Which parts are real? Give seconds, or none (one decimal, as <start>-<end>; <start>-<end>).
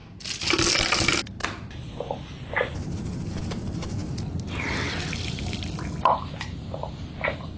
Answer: 0.0-7.6